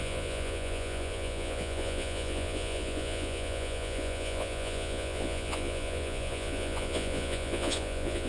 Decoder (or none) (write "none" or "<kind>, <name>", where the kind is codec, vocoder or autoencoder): vocoder, Vocos